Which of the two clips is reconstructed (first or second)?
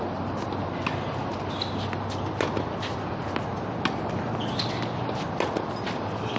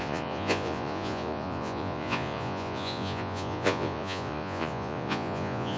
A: second